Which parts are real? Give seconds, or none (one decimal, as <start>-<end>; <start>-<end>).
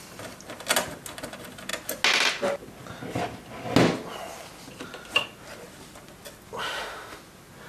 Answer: 0.0-6.6; 7.2-7.7